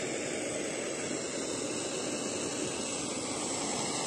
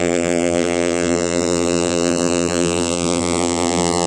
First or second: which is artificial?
second